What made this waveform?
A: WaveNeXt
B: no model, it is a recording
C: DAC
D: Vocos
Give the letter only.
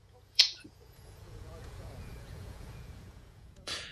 D